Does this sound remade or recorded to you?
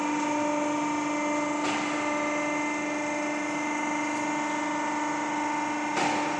recorded